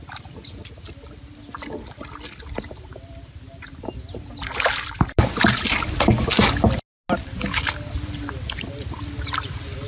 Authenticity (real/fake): real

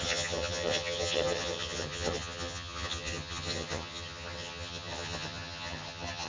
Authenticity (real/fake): fake